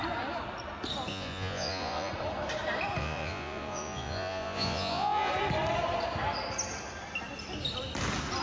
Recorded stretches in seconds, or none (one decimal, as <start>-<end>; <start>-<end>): 0.0-1.1; 2.1-3.0; 5.3-8.4